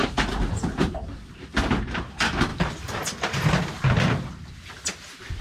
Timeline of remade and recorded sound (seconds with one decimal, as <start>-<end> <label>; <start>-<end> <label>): 0.0-0.5 remade; 0.5-2.5 recorded; 2.5-3.6 remade; 3.6-5.4 recorded